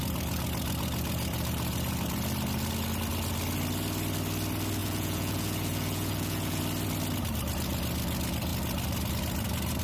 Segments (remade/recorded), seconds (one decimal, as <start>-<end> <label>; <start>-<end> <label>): 0.0-4.8 recorded; 4.8-6.6 remade; 6.6-9.8 recorded